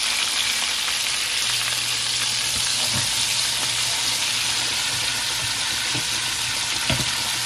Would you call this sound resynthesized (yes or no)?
no